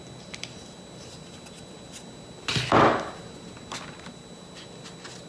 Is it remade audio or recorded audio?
recorded